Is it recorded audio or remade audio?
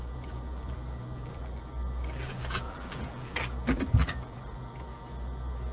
remade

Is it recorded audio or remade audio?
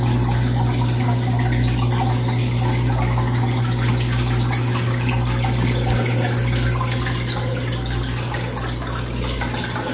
recorded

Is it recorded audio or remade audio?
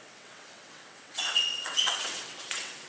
remade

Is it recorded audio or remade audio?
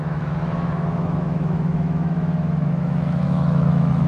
remade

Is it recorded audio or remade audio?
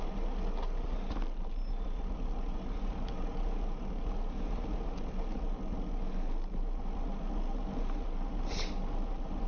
recorded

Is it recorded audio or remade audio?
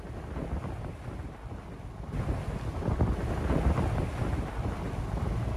recorded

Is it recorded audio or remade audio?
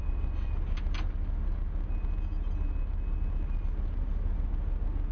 recorded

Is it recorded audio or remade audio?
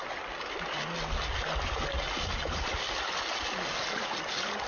recorded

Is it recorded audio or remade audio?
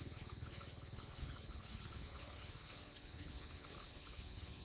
remade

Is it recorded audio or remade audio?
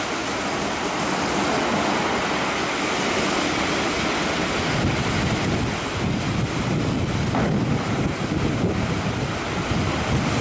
recorded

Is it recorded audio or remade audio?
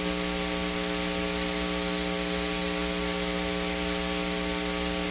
recorded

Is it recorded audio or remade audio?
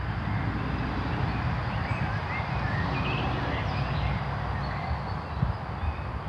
recorded